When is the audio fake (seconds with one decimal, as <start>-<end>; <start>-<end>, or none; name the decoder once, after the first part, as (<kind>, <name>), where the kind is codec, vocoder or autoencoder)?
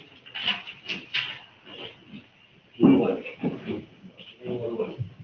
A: 3.1-5.2 (codec, DAC)